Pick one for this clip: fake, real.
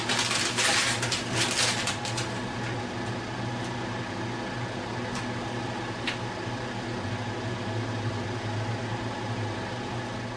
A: real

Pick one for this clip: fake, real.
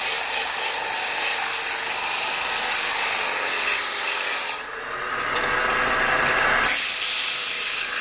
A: real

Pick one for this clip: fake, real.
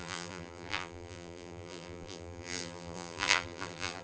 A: fake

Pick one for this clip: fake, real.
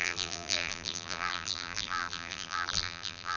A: fake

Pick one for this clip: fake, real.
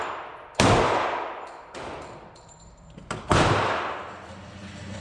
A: fake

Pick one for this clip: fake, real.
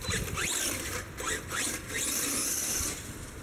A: real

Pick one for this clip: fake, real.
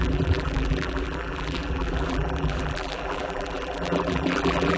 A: fake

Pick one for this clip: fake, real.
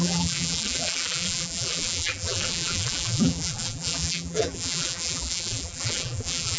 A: fake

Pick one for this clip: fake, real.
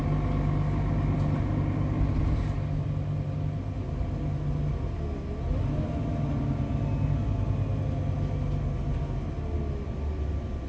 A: real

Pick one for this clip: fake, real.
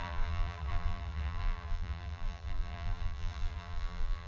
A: fake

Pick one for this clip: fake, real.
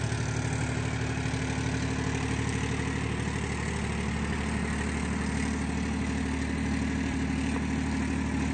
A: real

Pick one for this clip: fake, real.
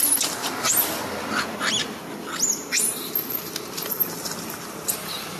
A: real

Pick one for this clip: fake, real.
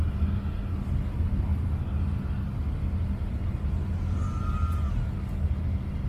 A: real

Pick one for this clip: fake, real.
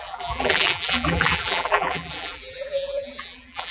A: fake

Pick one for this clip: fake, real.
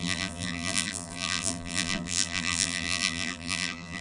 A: fake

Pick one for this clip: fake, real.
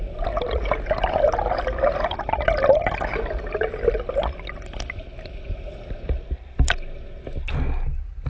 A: real